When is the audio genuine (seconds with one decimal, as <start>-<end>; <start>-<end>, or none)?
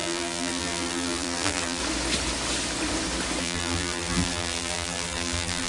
1.8-3.4